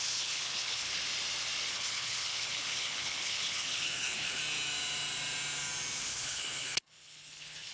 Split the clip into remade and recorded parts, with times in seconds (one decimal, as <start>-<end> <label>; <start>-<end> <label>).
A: 0.0-1.0 remade; 1.0-1.7 recorded; 1.7-4.4 remade; 4.4-6.0 recorded; 6.0-7.7 remade